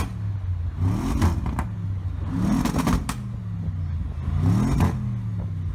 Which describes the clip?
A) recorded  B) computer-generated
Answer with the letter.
A